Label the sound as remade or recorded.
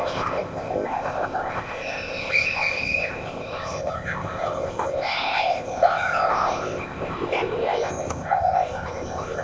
remade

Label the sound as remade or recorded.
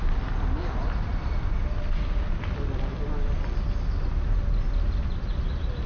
recorded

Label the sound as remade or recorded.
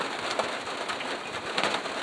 recorded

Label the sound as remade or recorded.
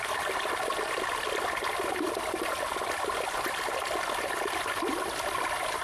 recorded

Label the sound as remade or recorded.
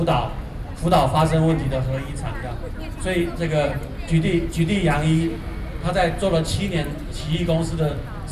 recorded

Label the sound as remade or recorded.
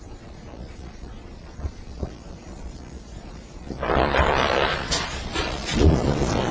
remade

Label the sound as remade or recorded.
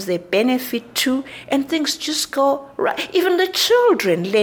recorded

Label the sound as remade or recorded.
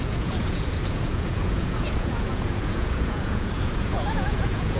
remade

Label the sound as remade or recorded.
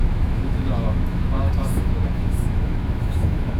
remade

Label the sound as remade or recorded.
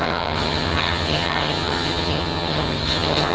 remade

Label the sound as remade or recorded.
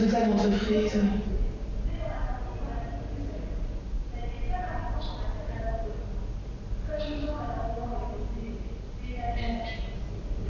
recorded